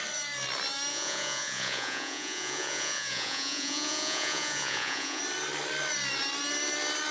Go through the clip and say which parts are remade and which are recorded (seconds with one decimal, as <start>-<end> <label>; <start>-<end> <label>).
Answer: 0.0-0.9 recorded; 0.9-5.2 remade; 5.2-7.1 recorded